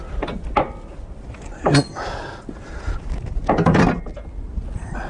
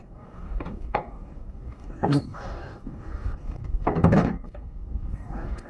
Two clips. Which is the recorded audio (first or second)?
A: first